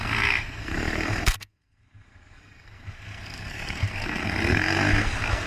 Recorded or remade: remade